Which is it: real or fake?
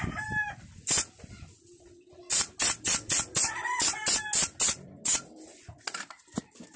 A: real